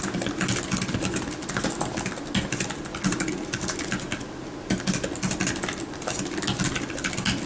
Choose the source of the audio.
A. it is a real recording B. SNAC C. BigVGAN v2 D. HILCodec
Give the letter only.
A